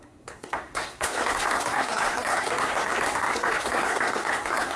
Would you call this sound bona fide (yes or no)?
no